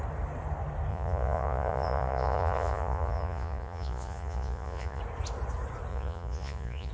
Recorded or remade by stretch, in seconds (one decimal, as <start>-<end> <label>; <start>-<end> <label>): 0.0-0.9 recorded; 0.9-5.0 remade; 5.0-5.9 recorded; 5.9-6.9 remade